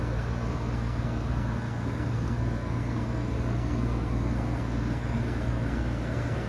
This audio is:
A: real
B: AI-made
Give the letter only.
B